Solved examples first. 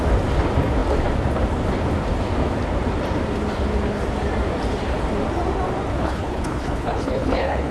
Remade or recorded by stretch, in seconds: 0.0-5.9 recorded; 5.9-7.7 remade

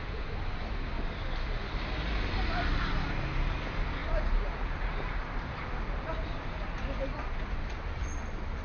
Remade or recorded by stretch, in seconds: 0.0-8.6 recorded